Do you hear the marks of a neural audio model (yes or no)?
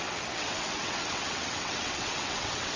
yes